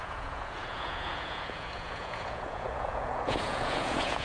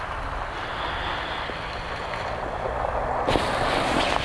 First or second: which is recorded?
second